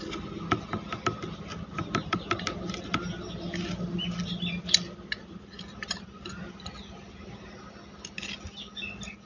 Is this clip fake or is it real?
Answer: real